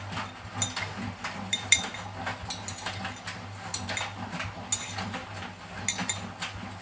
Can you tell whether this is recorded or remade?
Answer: recorded